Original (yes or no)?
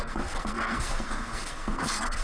no